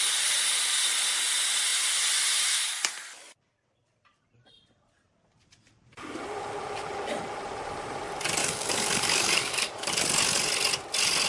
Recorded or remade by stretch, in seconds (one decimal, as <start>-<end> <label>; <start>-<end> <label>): 0.0-8.4 recorded; 8.4-9.9 remade; 9.9-11.3 recorded